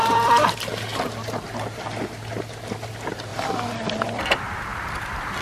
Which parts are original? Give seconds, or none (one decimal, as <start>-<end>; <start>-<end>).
3.3-4.2; 4.7-5.4